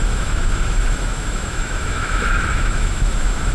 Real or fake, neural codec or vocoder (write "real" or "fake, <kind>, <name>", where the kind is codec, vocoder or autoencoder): fake, autoencoder, DAC-VAE